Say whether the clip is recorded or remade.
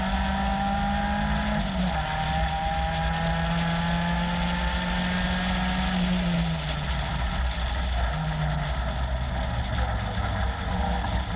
recorded